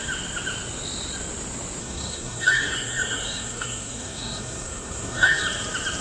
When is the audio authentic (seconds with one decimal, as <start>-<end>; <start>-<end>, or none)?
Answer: 0.0-1.8; 5.4-6.0